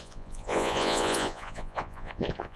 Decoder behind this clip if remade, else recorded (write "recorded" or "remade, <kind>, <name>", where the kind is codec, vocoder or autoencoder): remade, vocoder, Vocos